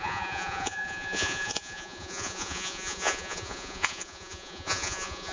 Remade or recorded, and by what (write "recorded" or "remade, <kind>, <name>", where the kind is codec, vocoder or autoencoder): remade, vocoder, Vocos